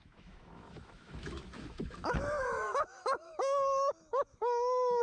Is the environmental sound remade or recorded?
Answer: remade